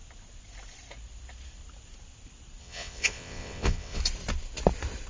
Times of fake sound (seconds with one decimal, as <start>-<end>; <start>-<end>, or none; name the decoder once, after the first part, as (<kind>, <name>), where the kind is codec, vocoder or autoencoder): 2.6-4.0 (vocoder, WaveNeXt)

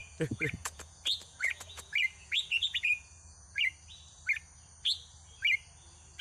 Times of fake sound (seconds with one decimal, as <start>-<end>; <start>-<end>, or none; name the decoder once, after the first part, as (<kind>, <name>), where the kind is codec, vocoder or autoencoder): 0.0-3.7 (vocoder, Vocos)

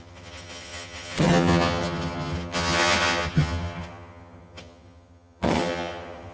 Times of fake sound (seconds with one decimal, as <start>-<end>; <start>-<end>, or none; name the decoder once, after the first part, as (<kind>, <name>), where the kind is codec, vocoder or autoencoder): 0.0-6.3 (vocoder, HiFi-GAN)

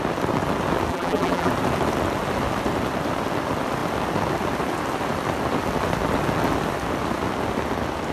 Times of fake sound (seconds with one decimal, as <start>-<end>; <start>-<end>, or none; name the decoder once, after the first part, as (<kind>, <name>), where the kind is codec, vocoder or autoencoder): 0.9-1.5 (vocoder, BigVGAN v2)

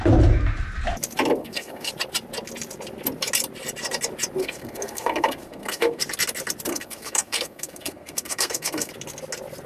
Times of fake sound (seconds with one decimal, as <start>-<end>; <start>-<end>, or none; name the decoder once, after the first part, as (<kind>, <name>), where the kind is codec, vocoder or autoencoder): 1.4-1.9 (codec, SNAC); 4.4-6.0; 6.7-8.9

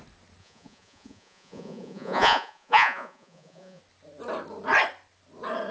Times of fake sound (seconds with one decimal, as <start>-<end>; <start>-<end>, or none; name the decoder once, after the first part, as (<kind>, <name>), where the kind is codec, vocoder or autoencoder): 0.4-3.8 (vocoder, Vocos)

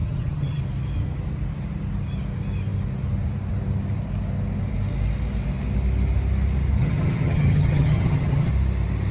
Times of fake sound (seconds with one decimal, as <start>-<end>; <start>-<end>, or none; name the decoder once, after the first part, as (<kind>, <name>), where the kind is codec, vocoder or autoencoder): 0.0-0.6 (vocoder, HiFi-GAN); 6.8-8.5

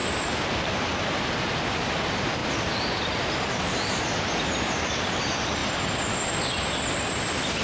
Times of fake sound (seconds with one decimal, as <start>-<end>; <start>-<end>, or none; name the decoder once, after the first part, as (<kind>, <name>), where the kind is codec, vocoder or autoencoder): none